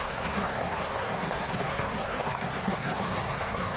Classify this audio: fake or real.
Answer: fake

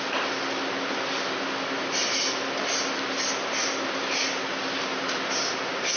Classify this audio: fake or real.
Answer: real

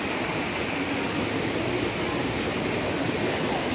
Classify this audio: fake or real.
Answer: real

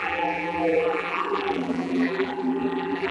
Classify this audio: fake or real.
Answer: fake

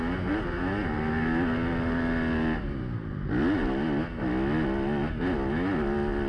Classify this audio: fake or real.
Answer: real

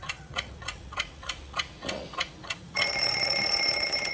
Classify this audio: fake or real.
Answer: fake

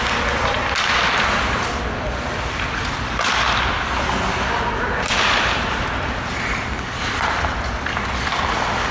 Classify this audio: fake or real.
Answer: real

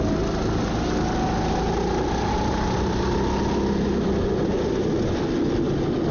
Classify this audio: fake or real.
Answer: real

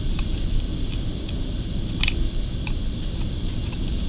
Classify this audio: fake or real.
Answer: real